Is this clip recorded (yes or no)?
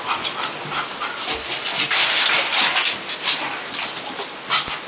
yes